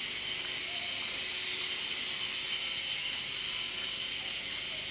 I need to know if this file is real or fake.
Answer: real